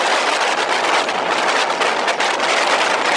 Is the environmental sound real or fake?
real